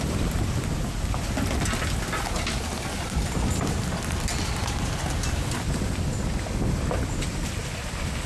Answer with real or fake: real